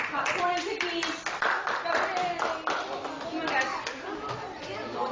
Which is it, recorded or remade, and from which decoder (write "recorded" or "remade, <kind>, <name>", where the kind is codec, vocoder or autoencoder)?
recorded